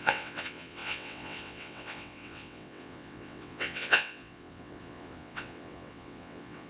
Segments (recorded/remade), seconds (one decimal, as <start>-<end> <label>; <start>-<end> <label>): 0.0-6.7 remade